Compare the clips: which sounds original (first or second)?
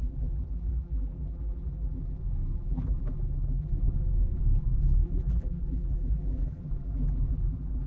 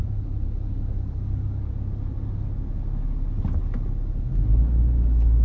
second